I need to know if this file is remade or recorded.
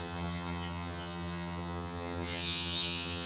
remade